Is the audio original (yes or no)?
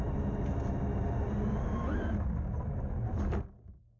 yes